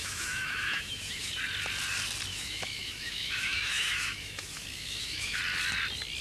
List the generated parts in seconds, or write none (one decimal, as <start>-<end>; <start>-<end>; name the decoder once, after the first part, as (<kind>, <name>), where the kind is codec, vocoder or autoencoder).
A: 0.0-1.3 (autoencoder, DAC-VAE); 2.3-5.4